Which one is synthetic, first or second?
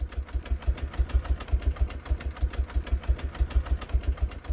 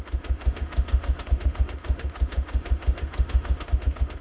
second